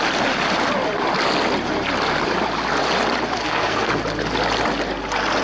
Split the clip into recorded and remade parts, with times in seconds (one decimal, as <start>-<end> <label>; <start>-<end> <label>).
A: 0.0-3.4 recorded; 3.4-3.9 remade; 3.9-5.4 recorded